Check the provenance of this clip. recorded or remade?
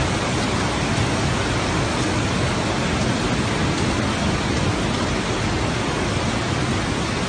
recorded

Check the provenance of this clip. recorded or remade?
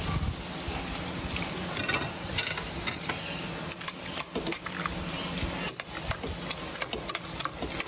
recorded